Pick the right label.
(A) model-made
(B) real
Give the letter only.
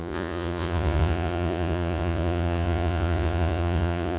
A